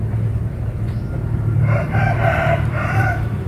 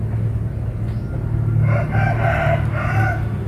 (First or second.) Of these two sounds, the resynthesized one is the first